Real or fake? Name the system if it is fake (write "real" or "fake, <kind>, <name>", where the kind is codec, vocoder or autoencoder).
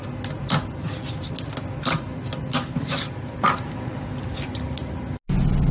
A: real